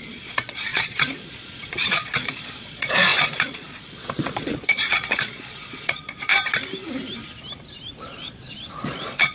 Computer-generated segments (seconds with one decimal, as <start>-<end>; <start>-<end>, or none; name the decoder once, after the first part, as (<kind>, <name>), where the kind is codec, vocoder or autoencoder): 0.0-6.3 (vocoder, Vocos); 7.9-9.3